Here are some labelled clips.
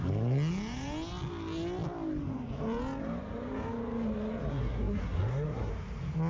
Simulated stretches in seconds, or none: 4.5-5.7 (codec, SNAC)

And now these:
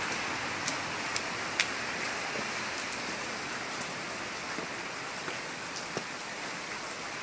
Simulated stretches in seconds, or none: none

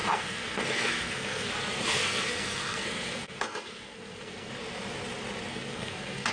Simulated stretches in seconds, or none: 0.0-1.5 (codec, SNAC); 1.9-4.5; 5.5-6.3

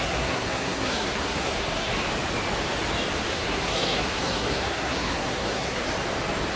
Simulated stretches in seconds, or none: 0.0-1.9 (codec, SNAC); 3.3-5.8

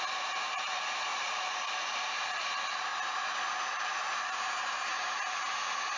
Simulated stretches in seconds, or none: none